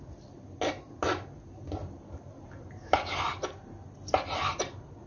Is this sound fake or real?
real